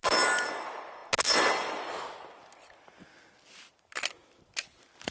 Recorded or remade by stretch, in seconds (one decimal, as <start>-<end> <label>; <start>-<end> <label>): 0.0-5.1 recorded